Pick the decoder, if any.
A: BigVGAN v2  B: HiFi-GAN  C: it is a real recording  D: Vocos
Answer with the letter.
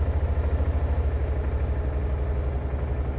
C